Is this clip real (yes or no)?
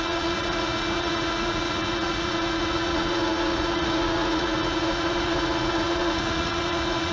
no